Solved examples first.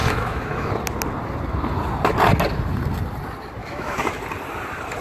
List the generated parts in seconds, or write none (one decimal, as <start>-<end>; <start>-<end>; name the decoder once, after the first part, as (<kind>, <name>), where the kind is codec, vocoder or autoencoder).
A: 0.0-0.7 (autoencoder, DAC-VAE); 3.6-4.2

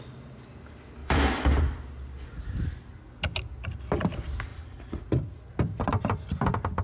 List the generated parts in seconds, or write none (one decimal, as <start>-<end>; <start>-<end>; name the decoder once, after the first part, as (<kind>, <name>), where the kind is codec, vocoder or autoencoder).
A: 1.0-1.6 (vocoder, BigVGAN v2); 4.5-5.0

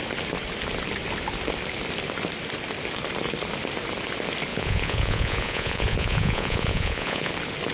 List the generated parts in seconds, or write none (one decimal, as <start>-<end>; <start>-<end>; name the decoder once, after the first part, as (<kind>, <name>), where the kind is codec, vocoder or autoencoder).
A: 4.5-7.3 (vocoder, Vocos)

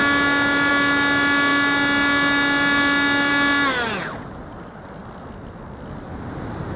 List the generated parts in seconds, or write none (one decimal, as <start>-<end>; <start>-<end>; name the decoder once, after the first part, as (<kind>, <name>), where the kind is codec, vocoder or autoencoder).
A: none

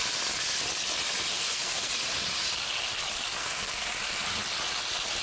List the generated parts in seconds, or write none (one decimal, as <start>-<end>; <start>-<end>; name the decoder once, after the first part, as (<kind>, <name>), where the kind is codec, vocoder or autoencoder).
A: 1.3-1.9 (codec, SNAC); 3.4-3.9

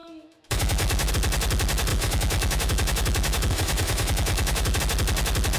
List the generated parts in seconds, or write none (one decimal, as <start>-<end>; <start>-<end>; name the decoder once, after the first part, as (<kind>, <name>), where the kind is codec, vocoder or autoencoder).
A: 0.0-1.1 (autoencoder, DAC-VAE); 1.9-4.8

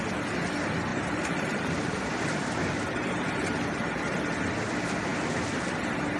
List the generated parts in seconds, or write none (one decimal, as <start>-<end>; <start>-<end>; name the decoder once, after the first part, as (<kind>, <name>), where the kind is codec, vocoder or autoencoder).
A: 0.9-4.4 (vocoder, BigVGAN v2)

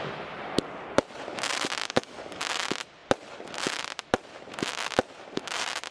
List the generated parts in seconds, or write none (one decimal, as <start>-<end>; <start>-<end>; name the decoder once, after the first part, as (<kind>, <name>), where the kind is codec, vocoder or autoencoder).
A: 1.8-2.4 (codec, DAC)